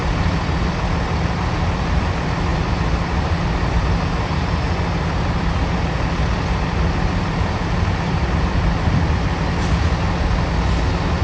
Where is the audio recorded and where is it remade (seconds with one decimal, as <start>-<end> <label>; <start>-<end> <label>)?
0.0-11.2 recorded

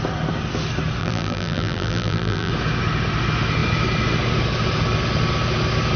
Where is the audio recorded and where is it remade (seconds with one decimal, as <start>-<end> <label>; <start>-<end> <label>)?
0.0-1.0 recorded; 1.0-2.5 remade; 2.5-6.0 recorded

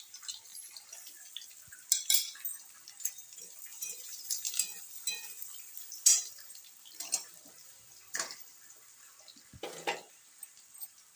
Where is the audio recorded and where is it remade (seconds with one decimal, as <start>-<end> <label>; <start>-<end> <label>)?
0.0-2.5 recorded; 2.5-6.6 remade; 6.6-7.6 recorded; 7.6-9.1 remade; 9.1-11.2 recorded

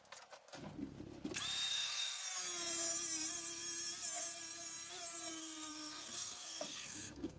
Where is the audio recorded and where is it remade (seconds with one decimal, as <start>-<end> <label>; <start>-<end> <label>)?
0.0-1.7 recorded; 1.7-2.2 remade; 2.2-5.4 recorded; 5.4-7.4 remade

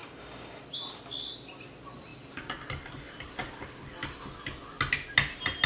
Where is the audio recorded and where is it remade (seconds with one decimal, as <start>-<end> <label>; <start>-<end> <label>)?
0.0-0.6 remade; 0.6-5.7 recorded